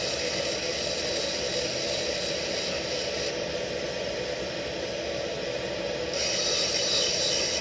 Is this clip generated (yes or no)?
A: no